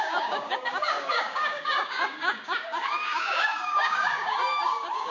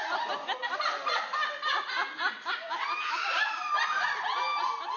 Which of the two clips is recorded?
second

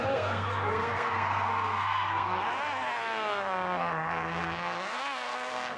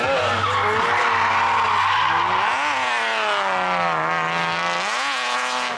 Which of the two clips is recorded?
second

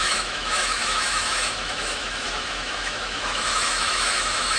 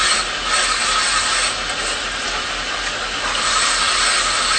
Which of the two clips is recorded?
second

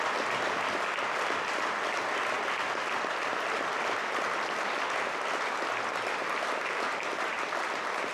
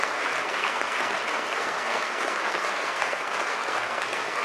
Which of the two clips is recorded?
first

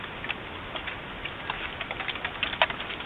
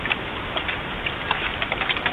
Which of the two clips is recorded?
first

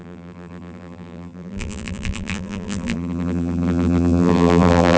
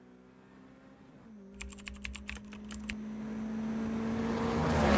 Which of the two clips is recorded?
second